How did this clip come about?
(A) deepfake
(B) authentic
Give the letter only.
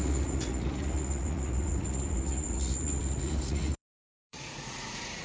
A